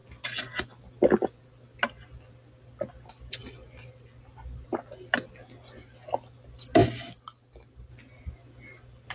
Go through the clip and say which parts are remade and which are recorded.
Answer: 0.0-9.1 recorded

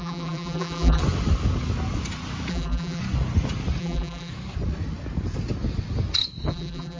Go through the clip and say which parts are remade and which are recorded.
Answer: 0.0-1.0 remade; 1.0-2.5 recorded; 2.5-3.0 remade; 3.0-3.8 recorded; 3.8-4.3 remade; 4.3-6.5 recorded; 6.5-7.0 remade

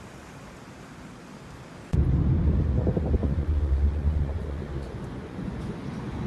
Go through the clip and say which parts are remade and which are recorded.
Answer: 0.0-3.2 recorded; 3.2-6.3 remade